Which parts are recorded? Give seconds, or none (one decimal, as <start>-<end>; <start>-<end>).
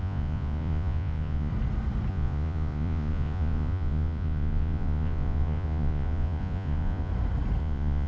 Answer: 1.5-2.1; 7.1-7.6